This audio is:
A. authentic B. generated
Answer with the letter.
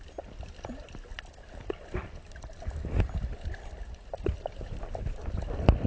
A